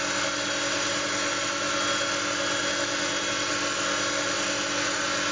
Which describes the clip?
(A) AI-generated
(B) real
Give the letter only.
B